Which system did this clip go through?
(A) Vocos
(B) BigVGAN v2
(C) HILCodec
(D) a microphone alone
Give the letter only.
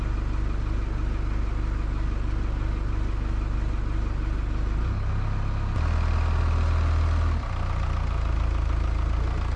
D